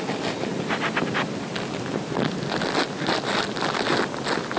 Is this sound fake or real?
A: real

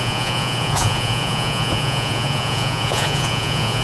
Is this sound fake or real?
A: fake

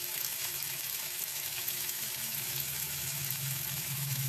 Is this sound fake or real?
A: fake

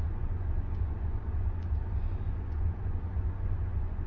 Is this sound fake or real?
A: fake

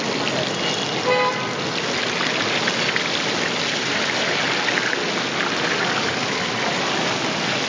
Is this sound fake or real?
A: real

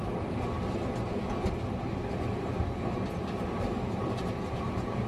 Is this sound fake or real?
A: real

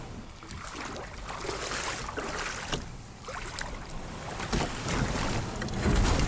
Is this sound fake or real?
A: real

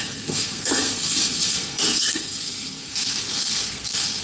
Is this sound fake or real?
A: fake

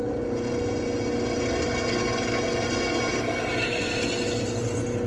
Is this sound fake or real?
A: real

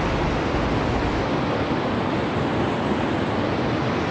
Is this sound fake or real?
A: real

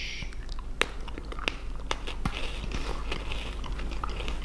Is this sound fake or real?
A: real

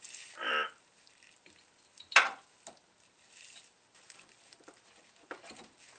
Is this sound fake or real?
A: real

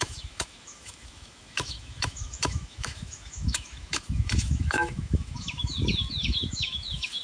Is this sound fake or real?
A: fake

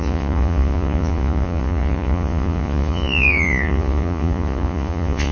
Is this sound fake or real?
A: fake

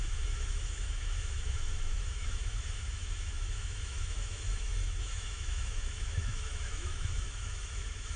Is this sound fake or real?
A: fake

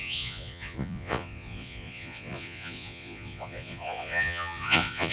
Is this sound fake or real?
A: fake